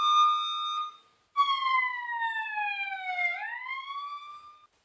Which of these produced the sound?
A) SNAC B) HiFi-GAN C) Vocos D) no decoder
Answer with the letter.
D